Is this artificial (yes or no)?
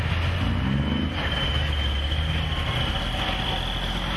no